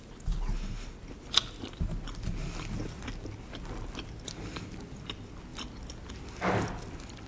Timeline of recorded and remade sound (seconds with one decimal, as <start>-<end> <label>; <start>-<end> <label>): 0.0-7.3 recorded